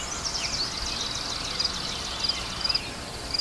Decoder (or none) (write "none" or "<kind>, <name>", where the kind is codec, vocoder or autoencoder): none